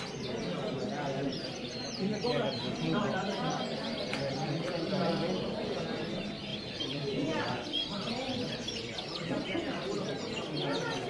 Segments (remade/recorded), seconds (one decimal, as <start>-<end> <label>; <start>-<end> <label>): 0.0-1.3 recorded; 1.3-5.6 remade; 5.6-6.5 recorded; 6.5-9.3 remade; 9.3-11.1 recorded